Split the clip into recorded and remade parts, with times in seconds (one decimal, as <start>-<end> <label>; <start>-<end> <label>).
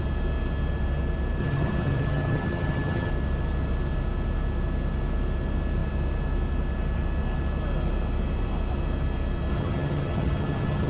0.0-1.4 recorded; 1.4-3.1 remade; 3.1-9.5 recorded; 9.5-10.9 remade